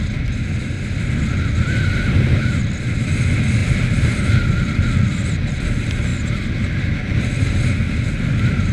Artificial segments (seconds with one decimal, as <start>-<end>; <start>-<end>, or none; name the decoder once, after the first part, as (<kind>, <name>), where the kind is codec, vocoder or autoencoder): 3.6-4.2 (vocoder, BigVGAN v2)